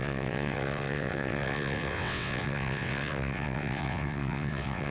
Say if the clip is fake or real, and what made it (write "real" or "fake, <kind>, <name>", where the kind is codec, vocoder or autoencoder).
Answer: fake, vocoder, WaveNeXt